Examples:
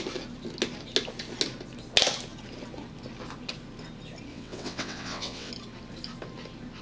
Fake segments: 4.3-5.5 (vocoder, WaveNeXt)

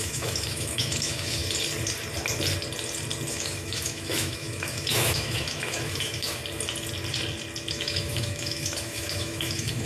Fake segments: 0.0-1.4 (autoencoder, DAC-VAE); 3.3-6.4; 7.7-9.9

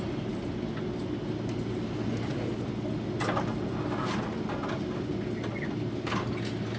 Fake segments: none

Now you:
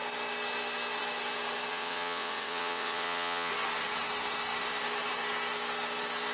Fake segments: 1.7-3.5 (vocoder, WaveNeXt)

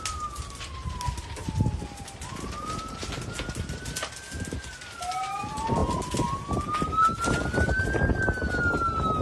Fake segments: none

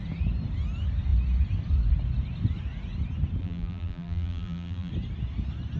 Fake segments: 3.4-4.9 (vocoder, BigVGAN v2)

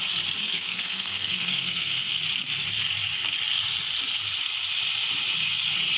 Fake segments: 0.4-2.2 (codec, SNAC)

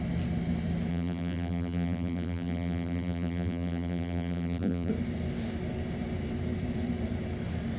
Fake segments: 0.9-4.9 (vocoder, BigVGAN v2)